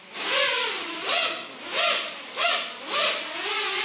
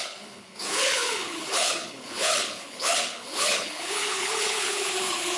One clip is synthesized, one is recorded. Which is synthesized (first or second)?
second